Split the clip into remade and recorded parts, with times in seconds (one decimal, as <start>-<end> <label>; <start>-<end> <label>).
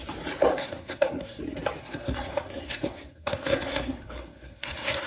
0.0-0.5 recorded; 0.5-1.4 remade; 1.4-1.8 recorded; 1.8-5.1 remade